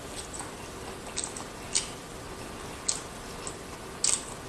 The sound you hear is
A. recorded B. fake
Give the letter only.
A